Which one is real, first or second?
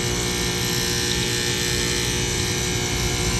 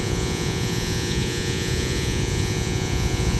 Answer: first